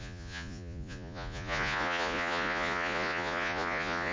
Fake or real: fake